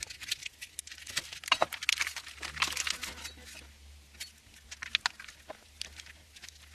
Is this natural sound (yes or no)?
yes